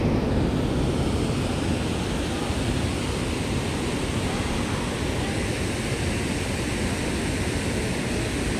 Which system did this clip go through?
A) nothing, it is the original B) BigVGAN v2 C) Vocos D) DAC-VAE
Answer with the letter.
A